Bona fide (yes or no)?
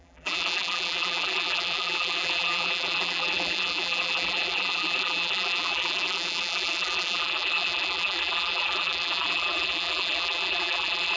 no